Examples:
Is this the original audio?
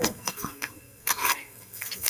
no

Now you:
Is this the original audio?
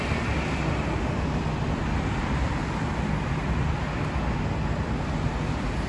yes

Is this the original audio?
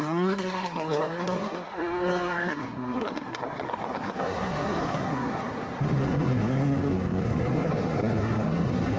no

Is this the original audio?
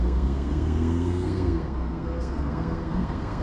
no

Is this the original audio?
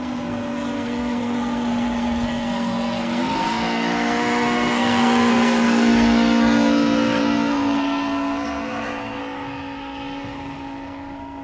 no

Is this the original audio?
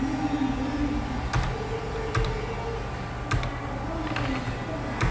yes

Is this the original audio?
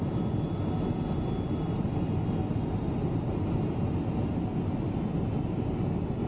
yes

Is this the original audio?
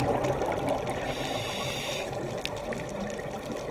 yes